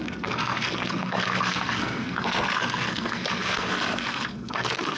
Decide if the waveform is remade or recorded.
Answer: remade